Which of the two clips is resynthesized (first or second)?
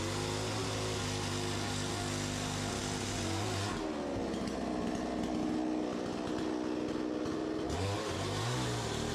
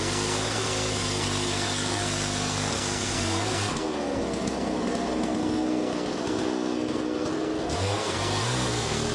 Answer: second